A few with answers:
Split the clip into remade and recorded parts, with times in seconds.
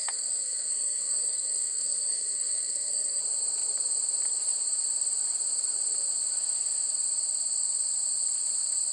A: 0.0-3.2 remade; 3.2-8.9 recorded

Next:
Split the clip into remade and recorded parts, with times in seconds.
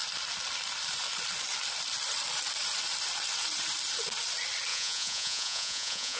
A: 0.0-4.7 recorded; 4.7-6.2 remade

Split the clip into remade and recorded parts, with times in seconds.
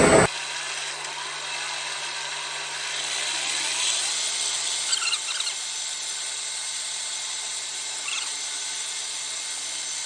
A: 0.0-6.6 recorded; 6.6-8.9 remade; 8.9-10.1 recorded